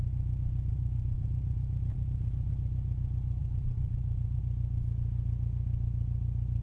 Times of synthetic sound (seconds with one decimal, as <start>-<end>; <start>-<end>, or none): 0.7-2.5; 3.4-4.4